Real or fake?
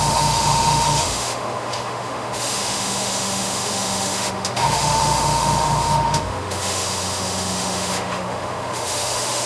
fake